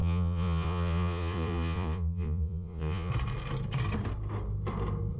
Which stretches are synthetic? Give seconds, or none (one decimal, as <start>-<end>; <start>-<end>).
0.0-3.1